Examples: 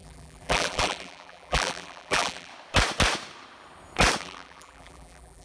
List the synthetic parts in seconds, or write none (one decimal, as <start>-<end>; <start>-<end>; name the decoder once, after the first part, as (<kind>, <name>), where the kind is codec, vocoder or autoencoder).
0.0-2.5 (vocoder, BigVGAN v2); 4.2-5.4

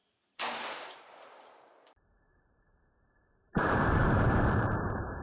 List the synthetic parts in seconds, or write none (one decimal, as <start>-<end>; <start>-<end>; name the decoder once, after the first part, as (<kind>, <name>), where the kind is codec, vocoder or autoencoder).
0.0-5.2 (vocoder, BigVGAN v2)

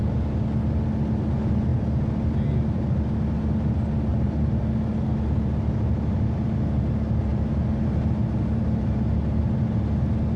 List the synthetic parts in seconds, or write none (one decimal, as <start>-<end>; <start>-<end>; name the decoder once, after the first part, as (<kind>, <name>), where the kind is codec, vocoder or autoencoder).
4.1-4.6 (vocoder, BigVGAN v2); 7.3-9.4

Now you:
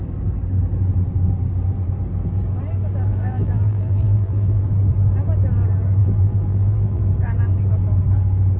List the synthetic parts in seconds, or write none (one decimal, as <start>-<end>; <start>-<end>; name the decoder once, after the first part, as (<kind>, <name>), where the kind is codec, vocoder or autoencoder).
3.1-4.6 (vocoder, BigVGAN v2); 6.0-7.0